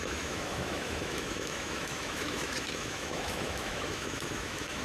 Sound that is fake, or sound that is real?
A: fake